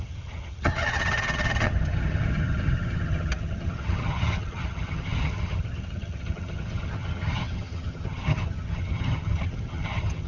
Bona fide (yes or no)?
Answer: no